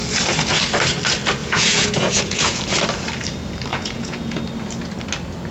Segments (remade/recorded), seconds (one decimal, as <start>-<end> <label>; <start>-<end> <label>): 0.0-1.4 recorded; 1.4-2.6 remade; 2.6-3.7 recorded; 3.7-4.4 remade; 4.4-5.5 recorded